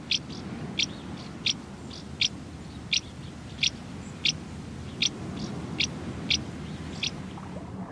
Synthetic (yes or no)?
no